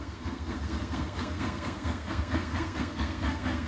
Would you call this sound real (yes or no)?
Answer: no